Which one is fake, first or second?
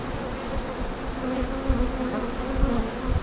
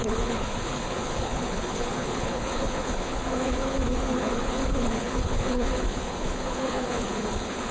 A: second